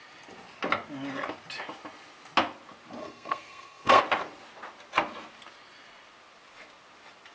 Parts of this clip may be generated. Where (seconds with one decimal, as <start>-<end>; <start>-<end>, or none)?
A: 3.0-4.0